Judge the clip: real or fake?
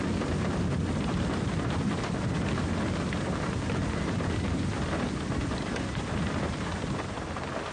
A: real